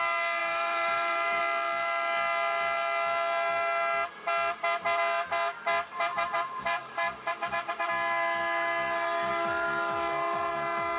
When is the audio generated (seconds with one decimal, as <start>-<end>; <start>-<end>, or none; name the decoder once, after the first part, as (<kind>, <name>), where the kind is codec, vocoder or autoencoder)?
0.4-1.4 (vocoder, BigVGAN v2); 6.1-7.3

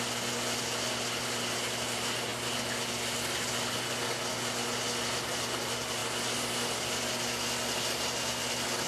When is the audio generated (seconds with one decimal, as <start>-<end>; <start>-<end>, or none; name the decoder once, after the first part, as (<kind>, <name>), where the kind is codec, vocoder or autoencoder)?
none

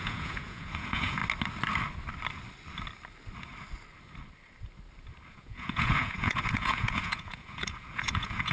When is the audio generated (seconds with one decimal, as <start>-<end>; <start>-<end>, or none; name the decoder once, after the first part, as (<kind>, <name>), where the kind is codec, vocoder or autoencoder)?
0.0-1.2 (vocoder, Vocos); 5.3-8.5

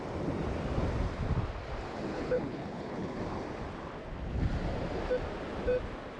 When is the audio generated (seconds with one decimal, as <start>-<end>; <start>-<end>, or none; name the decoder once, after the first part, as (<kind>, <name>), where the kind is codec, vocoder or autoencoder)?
2.1-3.2 (codec, HILCodec)

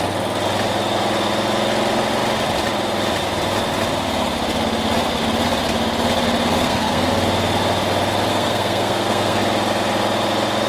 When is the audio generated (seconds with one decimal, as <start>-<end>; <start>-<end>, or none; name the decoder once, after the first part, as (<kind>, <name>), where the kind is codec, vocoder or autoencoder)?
6.6-7.1 (codec, SNAC); 8.3-9.4